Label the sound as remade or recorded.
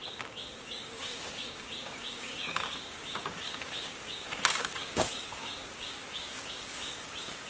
remade